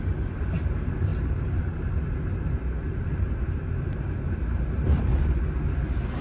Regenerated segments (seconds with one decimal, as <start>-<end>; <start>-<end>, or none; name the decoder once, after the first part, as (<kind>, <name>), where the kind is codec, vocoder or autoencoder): none